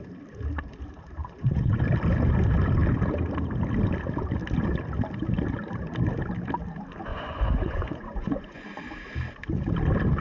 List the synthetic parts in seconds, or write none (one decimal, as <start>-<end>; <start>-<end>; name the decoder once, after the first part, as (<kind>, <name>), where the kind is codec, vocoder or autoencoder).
1.2-1.8 (vocoder, Vocos); 7.1-8.8